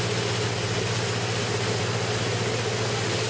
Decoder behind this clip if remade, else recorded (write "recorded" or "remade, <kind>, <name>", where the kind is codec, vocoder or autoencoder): recorded